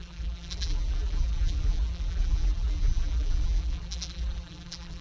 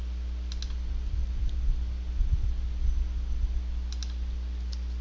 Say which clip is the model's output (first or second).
first